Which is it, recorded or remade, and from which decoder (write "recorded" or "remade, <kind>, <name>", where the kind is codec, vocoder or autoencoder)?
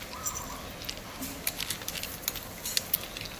recorded